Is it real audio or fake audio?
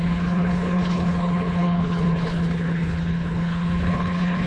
fake